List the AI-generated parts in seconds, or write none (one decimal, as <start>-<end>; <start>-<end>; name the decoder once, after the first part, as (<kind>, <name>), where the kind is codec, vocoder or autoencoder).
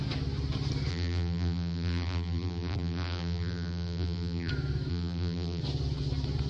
0.9-4.5 (vocoder, BigVGAN v2); 4.9-5.6